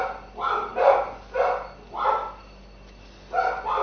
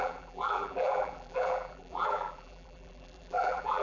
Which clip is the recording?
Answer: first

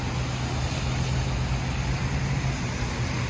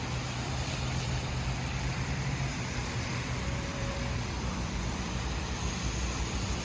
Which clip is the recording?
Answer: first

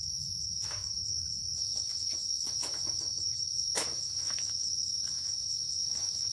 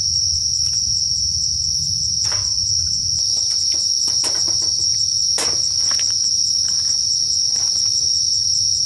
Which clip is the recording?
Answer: second